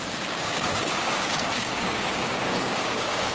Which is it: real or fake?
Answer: fake